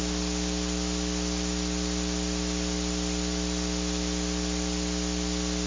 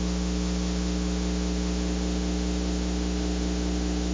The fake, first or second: second